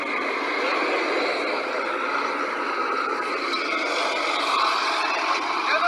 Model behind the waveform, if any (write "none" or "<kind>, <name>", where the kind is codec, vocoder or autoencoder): none